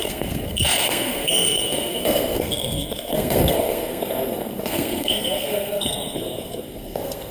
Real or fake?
fake